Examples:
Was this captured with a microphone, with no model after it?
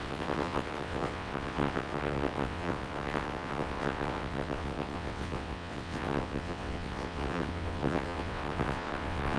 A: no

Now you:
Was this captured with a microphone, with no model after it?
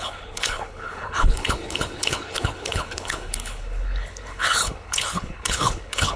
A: no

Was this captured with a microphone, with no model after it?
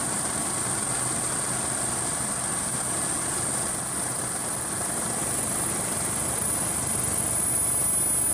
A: yes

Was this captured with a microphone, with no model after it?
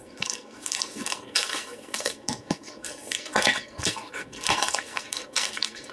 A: no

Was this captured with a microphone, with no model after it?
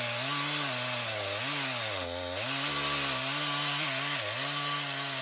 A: yes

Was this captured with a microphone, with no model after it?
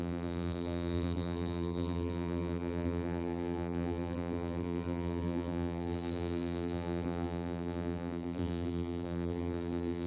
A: no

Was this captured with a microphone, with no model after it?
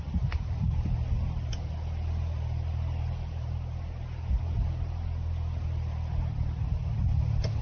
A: yes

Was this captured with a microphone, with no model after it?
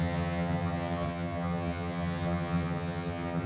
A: no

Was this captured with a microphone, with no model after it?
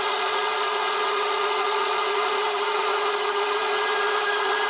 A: no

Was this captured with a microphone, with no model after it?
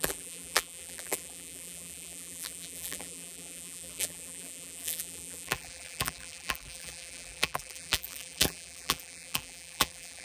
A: no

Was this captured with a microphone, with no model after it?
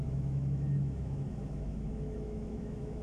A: no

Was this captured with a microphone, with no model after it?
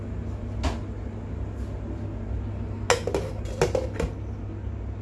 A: yes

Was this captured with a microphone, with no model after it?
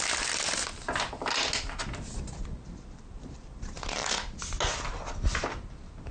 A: yes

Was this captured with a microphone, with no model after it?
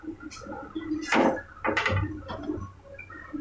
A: yes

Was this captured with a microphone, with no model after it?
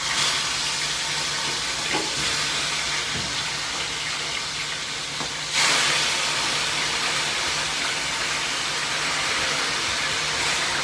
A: yes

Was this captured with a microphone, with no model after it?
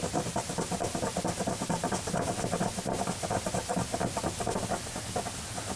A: yes